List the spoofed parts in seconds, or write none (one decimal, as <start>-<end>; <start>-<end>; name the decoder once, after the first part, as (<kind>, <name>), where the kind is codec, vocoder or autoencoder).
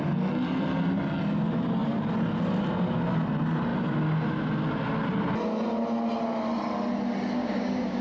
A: 7.4-8.0 (codec, DAC)